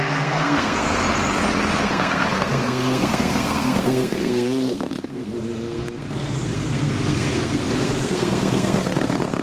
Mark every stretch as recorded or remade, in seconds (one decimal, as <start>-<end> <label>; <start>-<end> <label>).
0.0-1.0 remade; 1.0-1.8 recorded; 1.8-9.4 remade